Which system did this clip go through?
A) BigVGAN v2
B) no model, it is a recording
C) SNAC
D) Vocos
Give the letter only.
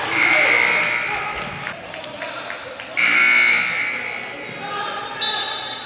B